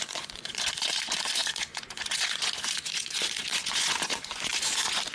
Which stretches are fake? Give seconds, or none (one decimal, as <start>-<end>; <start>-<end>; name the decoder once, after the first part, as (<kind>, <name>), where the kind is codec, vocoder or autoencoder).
0.0-5.1 (vocoder, Vocos)